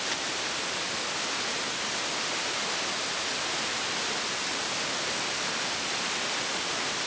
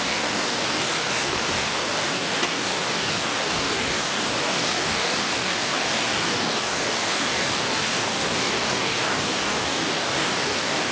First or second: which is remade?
second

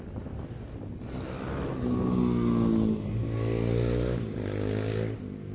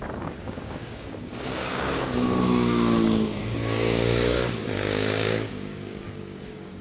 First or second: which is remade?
second